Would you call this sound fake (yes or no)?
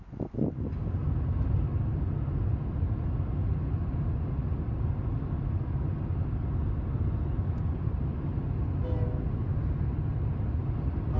no